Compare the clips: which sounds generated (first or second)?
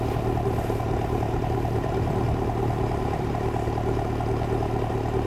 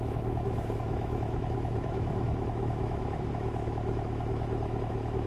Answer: second